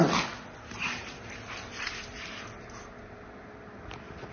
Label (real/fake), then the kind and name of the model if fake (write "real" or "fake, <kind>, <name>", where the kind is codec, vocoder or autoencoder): real